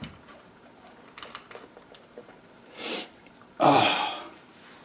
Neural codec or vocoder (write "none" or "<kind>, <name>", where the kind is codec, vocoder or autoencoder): vocoder, BigVGAN v2